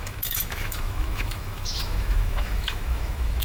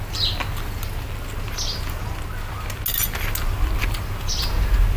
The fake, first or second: first